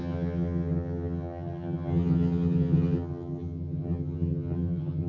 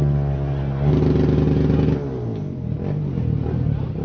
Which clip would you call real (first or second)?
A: second